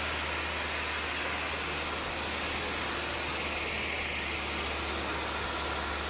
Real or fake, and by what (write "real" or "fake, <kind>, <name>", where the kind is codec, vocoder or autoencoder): real